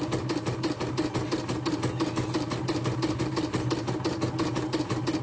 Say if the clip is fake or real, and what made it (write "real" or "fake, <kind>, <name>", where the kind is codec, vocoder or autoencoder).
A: real